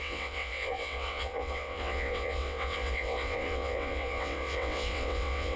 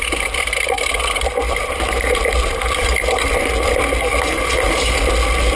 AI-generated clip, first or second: first